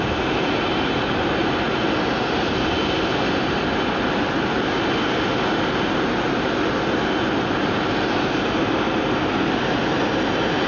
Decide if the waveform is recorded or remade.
recorded